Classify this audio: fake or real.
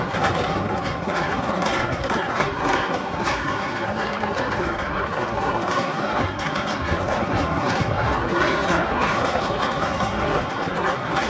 fake